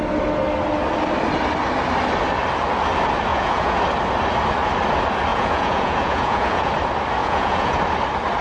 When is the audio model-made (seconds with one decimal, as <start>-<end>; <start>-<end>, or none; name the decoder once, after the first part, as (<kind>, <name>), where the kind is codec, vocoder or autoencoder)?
3.3-3.8 (vocoder, Vocos); 5.3-6.7; 7.2-7.8